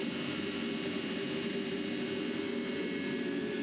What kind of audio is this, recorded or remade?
recorded